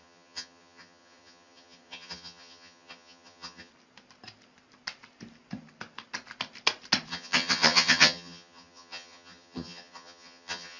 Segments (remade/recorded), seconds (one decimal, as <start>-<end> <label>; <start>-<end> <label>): 0.0-3.7 remade; 3.7-7.1 recorded; 7.1-10.8 remade